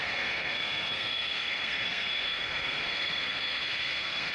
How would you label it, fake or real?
fake